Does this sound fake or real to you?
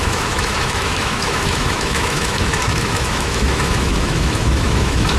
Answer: fake